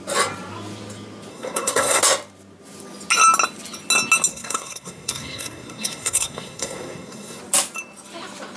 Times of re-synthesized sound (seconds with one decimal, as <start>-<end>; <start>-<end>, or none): 1.3-2.0; 4.3-7.4